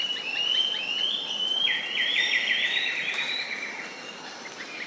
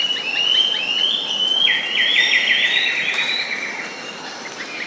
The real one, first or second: second